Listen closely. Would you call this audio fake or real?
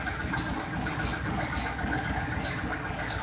fake